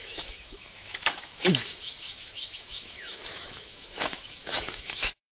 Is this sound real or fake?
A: fake